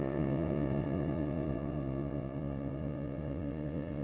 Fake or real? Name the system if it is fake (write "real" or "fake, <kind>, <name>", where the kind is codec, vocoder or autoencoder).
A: fake, vocoder, WaveNeXt